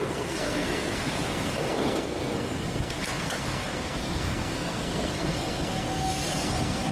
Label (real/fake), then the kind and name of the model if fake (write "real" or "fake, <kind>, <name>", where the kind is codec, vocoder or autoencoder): fake, codec, SNAC